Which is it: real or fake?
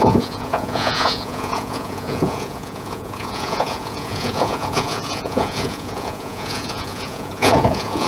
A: fake